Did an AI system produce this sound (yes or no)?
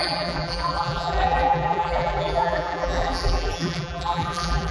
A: yes